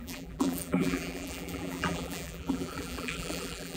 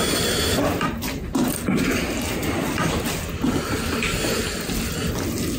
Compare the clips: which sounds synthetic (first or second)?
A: first